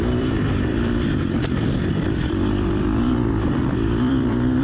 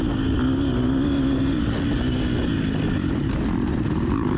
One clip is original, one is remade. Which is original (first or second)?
second